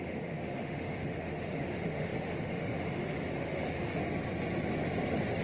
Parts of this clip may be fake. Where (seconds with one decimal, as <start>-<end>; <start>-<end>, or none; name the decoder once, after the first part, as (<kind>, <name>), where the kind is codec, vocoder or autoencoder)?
0.0-4.0 (autoencoder, DAC-VAE)